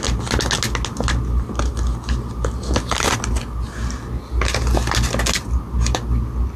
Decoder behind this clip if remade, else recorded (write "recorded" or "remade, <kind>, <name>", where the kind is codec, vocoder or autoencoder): recorded